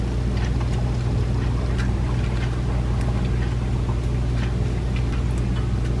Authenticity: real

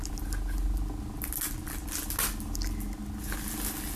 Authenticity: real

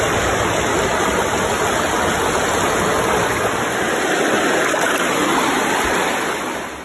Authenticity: real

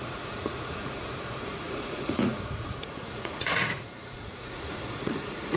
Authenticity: fake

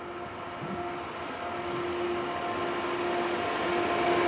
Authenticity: real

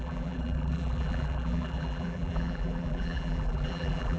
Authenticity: fake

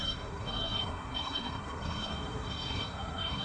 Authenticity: fake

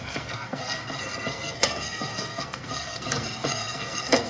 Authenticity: fake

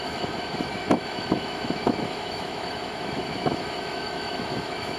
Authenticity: fake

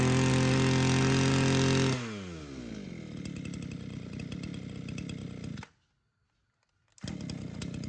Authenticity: real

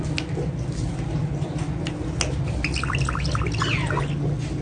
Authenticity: real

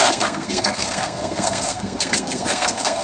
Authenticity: fake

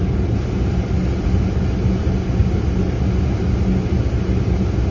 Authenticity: real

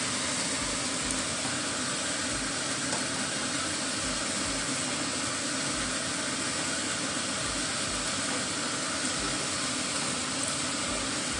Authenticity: real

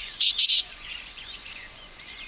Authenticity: fake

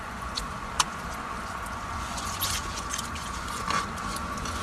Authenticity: fake